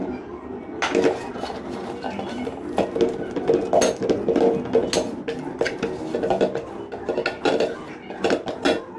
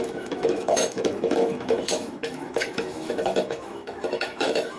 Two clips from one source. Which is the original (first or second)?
first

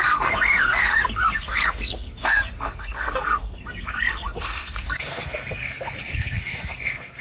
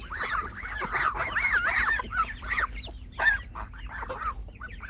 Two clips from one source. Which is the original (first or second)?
second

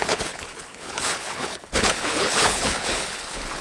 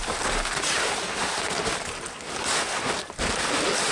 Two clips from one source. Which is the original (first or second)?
second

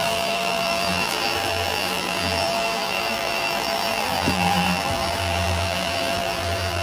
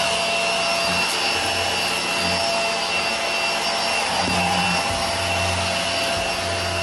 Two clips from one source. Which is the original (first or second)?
second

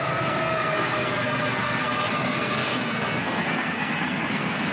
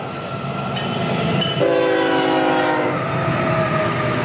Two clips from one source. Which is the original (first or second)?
second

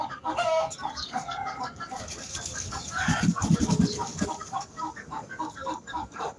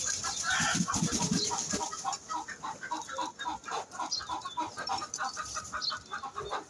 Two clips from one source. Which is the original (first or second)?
second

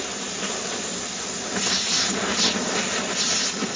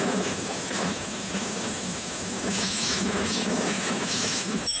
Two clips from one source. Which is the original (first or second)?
first